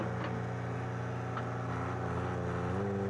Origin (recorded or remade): recorded